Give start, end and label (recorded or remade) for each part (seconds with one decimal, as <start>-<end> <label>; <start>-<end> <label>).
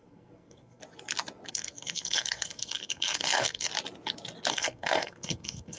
0.0-0.8 remade; 0.8-1.5 recorded; 1.5-3.7 remade; 3.7-4.5 recorded; 4.5-5.8 remade